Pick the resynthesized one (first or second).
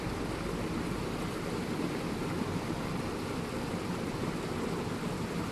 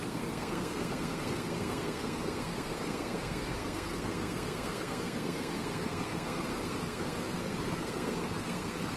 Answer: second